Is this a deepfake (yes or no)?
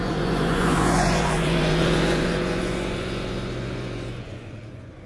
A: yes